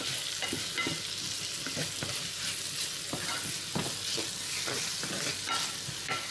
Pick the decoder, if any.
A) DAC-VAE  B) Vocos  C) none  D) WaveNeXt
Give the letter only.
C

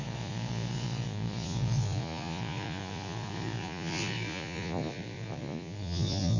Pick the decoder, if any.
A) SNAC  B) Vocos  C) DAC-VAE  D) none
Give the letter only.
B